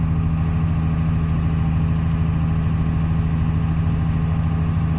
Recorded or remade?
recorded